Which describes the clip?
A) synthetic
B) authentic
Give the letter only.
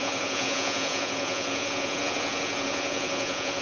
A